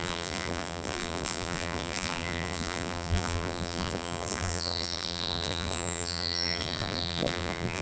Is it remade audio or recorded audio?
remade